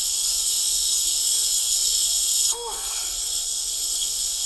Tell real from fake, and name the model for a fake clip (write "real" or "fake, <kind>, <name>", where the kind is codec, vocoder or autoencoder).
fake, codec, SNAC